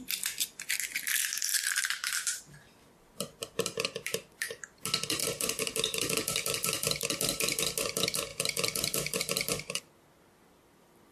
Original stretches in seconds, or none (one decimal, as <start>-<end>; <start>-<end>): 0.0-11.1